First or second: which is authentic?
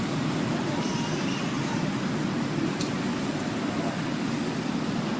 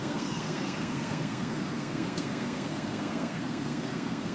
first